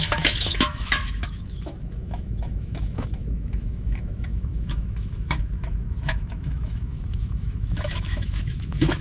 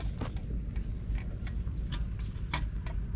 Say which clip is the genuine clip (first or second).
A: second